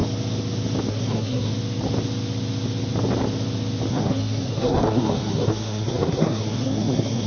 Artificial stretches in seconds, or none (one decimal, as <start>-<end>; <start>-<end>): 0.9-1.5; 3.9-7.3